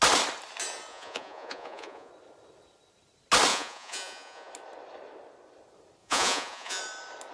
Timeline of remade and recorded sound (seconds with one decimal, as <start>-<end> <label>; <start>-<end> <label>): 0.0-0.9 recorded; 0.9-2.1 remade; 2.1-3.5 recorded; 3.5-4.5 remade; 4.5-6.0 recorded; 6.0-6.8 remade; 6.8-7.3 recorded